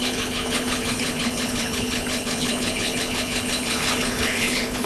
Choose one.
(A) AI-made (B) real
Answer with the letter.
A